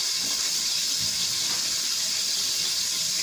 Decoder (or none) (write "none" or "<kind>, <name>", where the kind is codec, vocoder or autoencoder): vocoder, BigVGAN v2